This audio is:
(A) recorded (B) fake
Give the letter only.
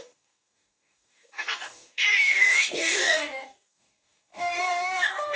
B